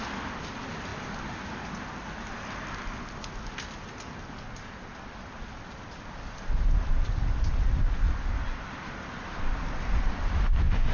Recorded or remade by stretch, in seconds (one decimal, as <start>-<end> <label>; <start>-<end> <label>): 0.0-10.9 recorded